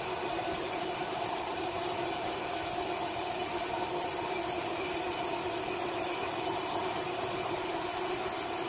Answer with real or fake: real